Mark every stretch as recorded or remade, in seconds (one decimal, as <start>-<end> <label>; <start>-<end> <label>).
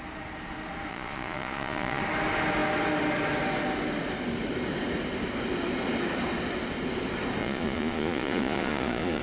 0.0-0.9 recorded; 0.9-2.0 remade; 2.0-7.4 recorded; 7.4-9.2 remade